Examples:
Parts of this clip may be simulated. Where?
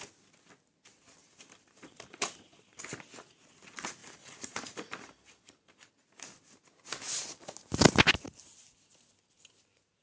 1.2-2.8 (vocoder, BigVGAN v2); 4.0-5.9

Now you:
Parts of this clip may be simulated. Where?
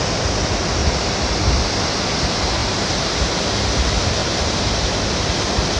0.8-1.7 (vocoder, BigVGAN v2); 2.6-3.3; 4.2-5.0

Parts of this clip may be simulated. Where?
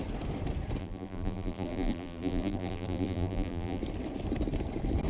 0.8-3.8 (vocoder, BigVGAN v2)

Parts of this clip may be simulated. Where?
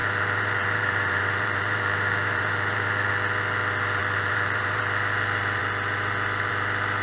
0.0-3.1 (vocoder, BigVGAN v2); 4.0-4.8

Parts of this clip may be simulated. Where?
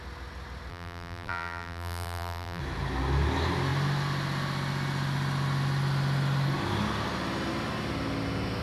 0.7-2.6 (vocoder, BigVGAN v2)